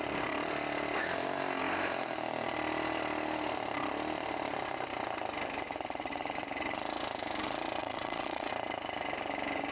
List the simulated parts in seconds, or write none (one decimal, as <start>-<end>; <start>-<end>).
7.8-8.5